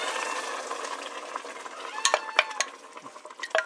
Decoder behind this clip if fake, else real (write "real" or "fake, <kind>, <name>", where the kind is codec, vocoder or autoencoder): real